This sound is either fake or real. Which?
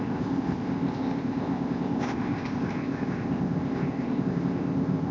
fake